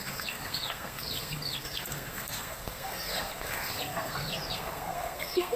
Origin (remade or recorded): remade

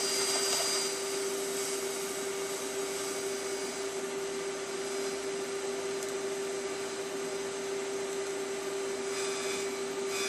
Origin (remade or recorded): recorded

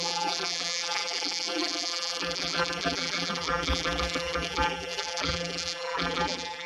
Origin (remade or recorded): remade